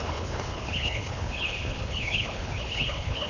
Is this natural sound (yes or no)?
no